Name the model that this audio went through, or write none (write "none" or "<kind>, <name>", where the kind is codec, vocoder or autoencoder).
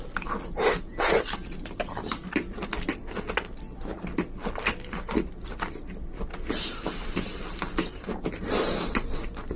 none